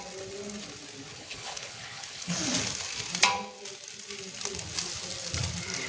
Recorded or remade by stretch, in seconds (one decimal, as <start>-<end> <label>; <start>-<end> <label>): 0.0-1.1 recorded; 1.1-2.4 remade; 2.4-5.9 recorded